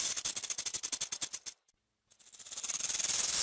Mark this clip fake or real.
real